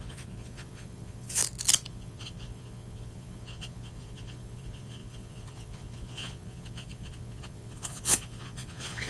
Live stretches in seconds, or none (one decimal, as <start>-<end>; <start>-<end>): 1.4-1.9